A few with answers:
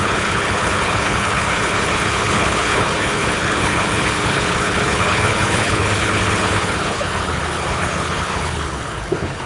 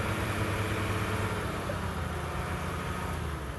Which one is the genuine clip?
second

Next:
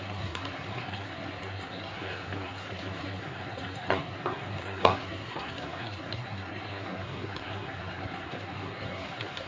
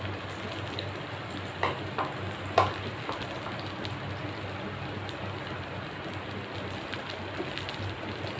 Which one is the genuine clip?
second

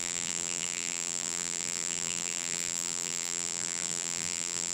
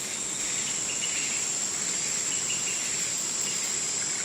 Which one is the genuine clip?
second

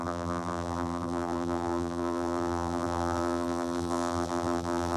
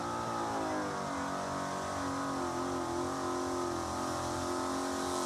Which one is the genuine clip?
second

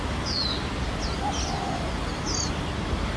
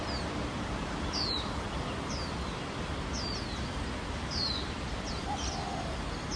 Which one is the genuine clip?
first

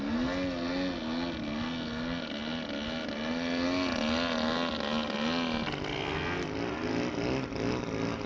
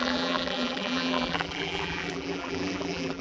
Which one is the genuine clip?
first